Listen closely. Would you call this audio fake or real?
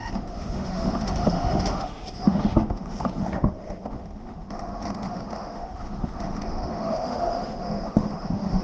fake